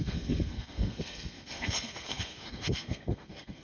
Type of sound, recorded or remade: remade